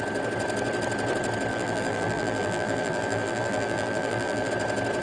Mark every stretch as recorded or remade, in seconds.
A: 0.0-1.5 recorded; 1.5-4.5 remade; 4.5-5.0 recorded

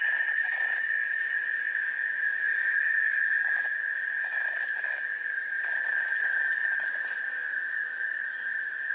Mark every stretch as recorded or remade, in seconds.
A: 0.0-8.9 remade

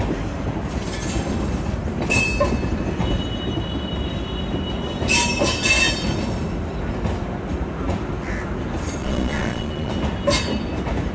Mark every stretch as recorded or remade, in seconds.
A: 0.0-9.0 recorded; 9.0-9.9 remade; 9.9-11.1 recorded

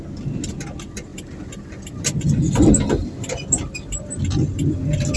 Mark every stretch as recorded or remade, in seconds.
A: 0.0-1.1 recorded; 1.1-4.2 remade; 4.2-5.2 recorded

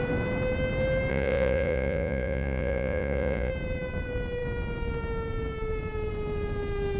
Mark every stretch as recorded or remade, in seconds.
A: 0.0-1.1 recorded; 1.1-3.5 remade; 3.5-7.0 recorded

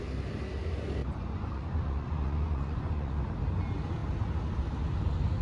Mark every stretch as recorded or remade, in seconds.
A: 0.0-1.0 recorded; 1.0-3.2 remade; 3.2-5.4 recorded